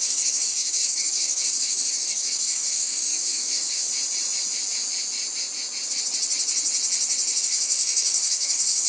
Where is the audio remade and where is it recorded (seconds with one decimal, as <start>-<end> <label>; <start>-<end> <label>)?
0.0-3.9 remade; 3.9-7.4 recorded; 7.4-8.9 remade